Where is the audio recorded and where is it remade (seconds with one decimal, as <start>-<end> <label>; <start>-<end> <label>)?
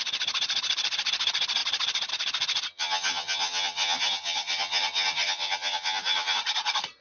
0.0-2.7 recorded; 2.7-6.4 remade; 6.4-7.0 recorded